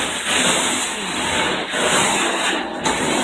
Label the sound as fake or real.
real